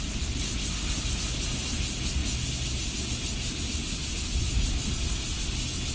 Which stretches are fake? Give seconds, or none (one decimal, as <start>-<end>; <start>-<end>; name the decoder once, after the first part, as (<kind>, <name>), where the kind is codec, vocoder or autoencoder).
none